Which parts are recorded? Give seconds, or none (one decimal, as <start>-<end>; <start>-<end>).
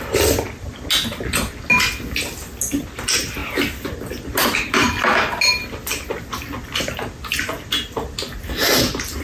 0.0-9.2